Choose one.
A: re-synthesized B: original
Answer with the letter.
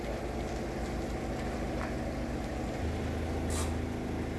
B